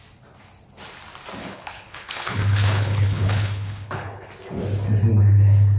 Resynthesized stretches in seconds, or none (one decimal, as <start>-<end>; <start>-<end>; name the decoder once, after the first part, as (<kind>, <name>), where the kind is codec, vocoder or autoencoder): 1.4-4.3 (codec, HILCodec)